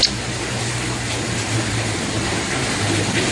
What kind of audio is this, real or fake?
real